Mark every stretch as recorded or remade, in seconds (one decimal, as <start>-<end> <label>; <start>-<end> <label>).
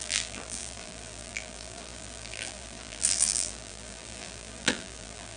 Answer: 0.0-5.4 remade